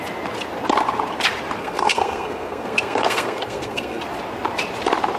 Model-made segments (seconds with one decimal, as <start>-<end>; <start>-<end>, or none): 1.6-4.0